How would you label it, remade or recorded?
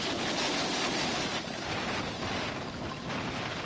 recorded